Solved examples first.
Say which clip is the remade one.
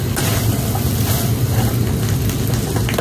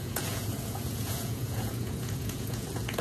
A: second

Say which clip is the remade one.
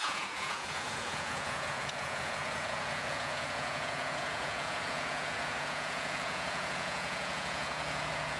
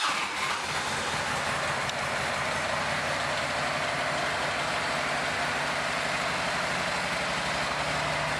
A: first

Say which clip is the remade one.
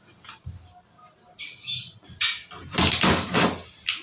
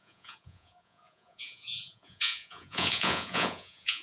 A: second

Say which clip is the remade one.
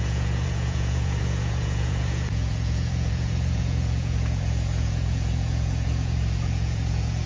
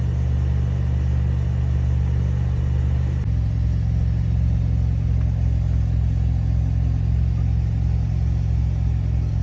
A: first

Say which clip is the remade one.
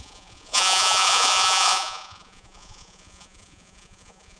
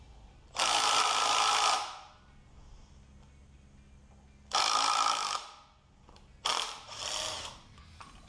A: first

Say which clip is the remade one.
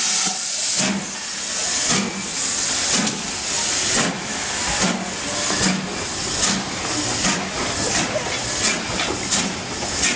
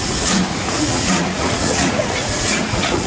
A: second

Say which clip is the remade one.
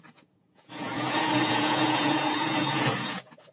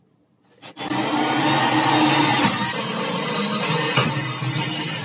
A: first